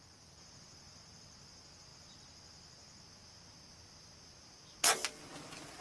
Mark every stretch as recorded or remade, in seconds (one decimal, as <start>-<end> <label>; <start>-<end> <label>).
0.0-5.8 recorded